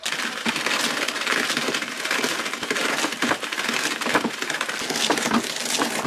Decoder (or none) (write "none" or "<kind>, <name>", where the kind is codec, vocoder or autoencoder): none